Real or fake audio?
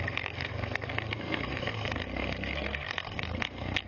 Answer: fake